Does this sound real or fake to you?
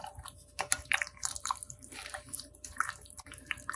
fake